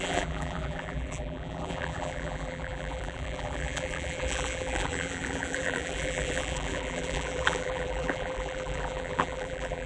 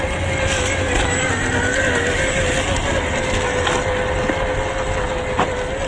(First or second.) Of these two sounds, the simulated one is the first